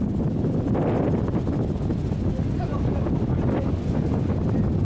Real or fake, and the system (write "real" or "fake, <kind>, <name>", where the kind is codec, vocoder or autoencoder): real